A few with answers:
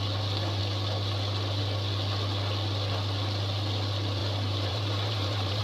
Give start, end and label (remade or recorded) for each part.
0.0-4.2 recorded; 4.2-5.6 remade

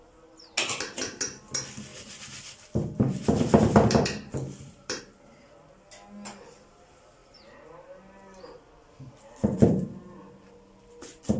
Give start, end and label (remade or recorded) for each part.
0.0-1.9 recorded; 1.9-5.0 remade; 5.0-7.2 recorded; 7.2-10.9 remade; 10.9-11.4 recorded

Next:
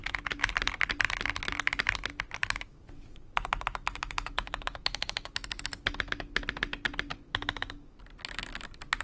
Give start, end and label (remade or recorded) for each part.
0.0-2.4 recorded; 2.4-6.4 remade; 6.4-7.1 recorded; 7.1-8.0 remade; 8.0-9.0 recorded

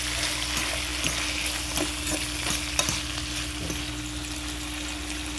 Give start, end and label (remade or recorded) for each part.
0.0-5.4 recorded

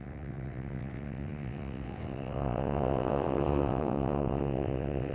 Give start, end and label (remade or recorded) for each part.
0.0-5.1 remade

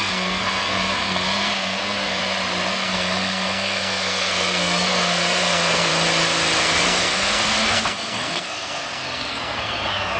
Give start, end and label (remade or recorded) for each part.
0.0-2.2 remade; 2.2-2.7 recorded; 2.7-5.9 remade; 5.9-6.6 recorded; 6.6-10.2 remade

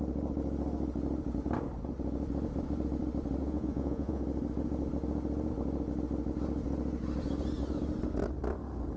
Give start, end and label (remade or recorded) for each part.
0.0-3.4 recorded; 3.4-4.2 remade; 4.2-9.0 recorded